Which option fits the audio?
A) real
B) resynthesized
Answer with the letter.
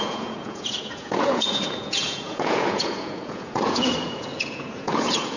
B